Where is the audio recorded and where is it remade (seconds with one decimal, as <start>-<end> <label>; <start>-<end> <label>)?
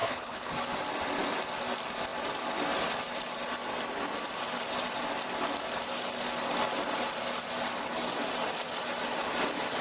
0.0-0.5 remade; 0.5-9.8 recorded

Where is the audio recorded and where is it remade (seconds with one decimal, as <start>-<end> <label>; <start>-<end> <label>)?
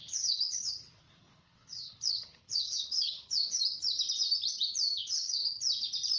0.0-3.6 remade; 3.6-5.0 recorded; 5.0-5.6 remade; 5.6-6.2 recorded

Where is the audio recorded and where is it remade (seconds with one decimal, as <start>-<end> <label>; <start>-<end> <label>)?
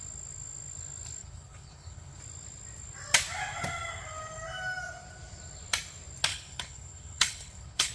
0.0-1.2 recorded; 1.2-2.2 remade; 2.2-6.3 recorded; 6.3-7.9 remade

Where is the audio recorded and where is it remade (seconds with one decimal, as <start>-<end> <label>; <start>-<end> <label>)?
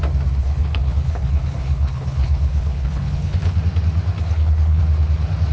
0.0-0.4 recorded; 0.4-3.6 remade; 3.6-4.2 recorded; 4.2-4.8 remade; 4.8-5.5 recorded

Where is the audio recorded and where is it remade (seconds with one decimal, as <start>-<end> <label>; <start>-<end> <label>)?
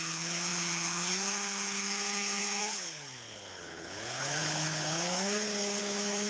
0.0-6.3 remade